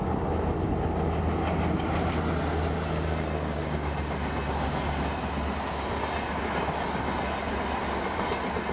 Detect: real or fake real